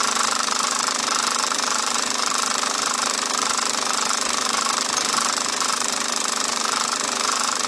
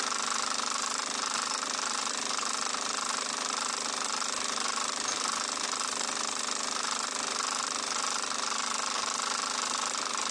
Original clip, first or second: second